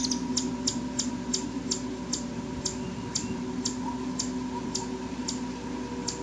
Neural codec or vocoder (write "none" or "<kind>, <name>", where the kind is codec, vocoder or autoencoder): none